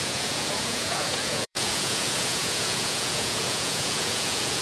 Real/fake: fake